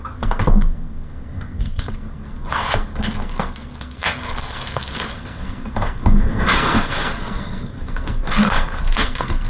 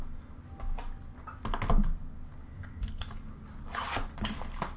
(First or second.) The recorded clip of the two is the second